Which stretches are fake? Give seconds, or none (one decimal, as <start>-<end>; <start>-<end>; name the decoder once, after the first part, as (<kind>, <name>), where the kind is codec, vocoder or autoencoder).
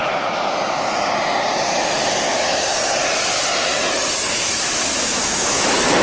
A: 2.3-2.7 (autoencoder, DAC-VAE); 4.3-6.0